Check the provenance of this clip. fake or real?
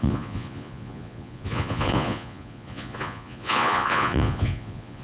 fake